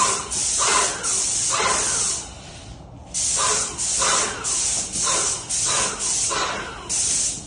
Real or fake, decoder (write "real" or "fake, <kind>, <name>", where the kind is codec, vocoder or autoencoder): real